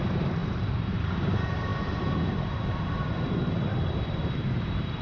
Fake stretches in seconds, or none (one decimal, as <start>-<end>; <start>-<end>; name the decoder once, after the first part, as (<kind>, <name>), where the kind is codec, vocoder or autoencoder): 0.0-5.0 (vocoder, BigVGAN v2)